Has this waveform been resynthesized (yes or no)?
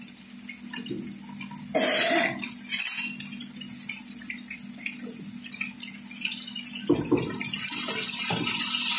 no